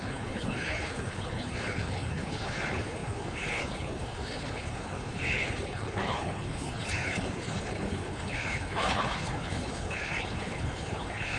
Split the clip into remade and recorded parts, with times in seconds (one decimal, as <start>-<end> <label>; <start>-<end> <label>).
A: 0.0-11.4 remade